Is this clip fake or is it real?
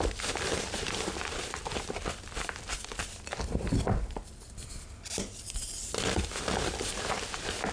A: fake